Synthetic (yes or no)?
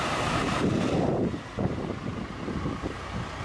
yes